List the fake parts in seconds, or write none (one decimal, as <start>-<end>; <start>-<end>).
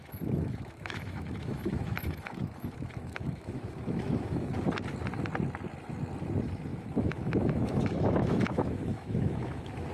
0.0-4.5; 6.7-9.9